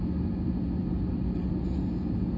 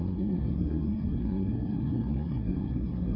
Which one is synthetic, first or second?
second